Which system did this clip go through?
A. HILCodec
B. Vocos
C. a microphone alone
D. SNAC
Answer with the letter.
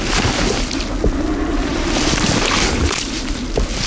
C